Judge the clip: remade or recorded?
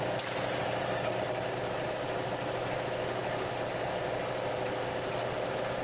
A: recorded